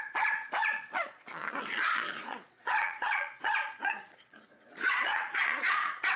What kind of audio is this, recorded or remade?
remade